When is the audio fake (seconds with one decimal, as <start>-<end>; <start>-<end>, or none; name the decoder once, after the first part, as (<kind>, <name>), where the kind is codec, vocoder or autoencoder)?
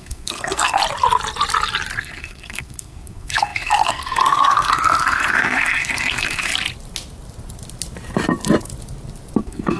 0.0-0.8 (codec, SNAC); 2.0-6.5; 9.4-9.8